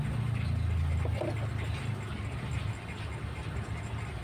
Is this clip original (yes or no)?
yes